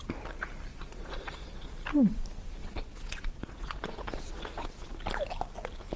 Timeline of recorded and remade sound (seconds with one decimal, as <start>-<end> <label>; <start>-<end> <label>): 0.0-0.7 recorded; 0.7-1.7 remade; 1.7-2.6 recorded; 2.6-4.9 remade; 4.9-6.0 recorded